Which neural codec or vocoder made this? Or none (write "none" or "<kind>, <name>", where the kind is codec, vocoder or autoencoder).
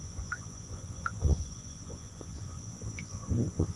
vocoder, Vocos